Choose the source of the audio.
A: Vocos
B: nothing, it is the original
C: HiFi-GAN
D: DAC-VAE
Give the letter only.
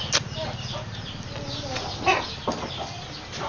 B